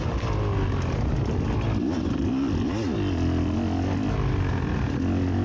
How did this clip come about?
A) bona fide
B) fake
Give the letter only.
A